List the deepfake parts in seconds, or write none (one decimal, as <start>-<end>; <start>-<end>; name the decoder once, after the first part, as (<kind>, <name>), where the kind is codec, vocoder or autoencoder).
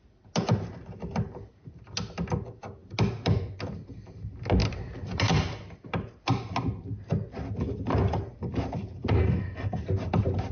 9.2-9.8 (codec, SNAC)